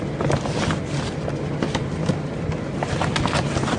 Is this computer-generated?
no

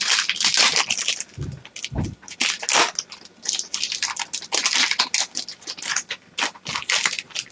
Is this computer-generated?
no